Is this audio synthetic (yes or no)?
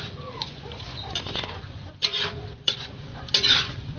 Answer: yes